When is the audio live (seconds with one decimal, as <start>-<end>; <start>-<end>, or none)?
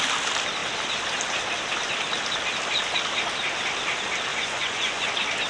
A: 0.0-4.3; 5.1-5.5